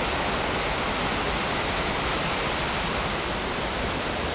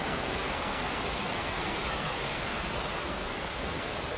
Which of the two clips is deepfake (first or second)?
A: second